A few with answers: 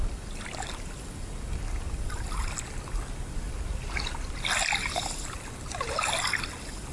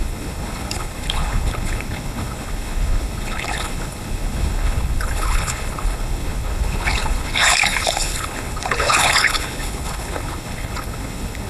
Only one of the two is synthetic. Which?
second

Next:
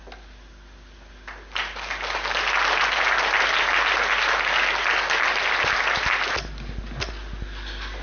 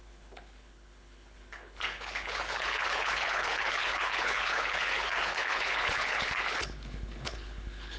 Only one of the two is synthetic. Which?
second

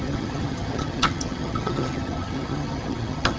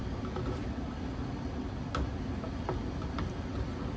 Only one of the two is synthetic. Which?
first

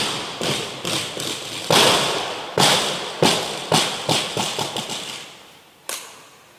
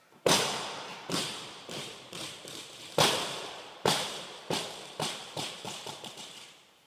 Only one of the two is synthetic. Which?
second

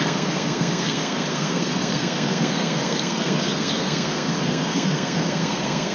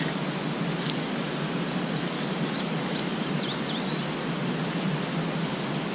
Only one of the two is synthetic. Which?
first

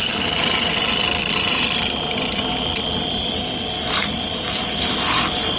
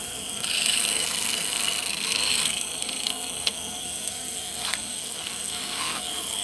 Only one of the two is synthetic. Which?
second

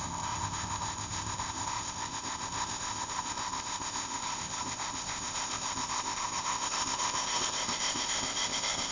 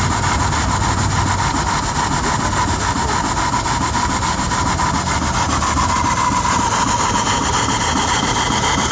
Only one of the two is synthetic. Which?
first